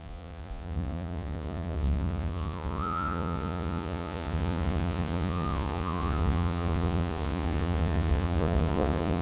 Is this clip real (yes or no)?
no